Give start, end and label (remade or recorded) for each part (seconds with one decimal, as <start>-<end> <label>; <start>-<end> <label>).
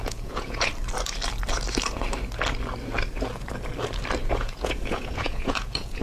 0.0-0.7 remade; 0.7-4.3 recorded; 4.3-6.0 remade